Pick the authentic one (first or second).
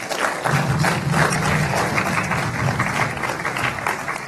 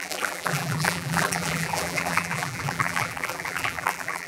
first